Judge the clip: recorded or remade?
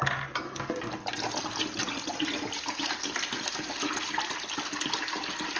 recorded